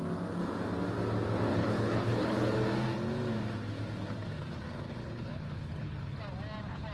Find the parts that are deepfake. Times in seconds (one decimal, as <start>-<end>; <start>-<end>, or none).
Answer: 1.5-2.5; 5.0-6.2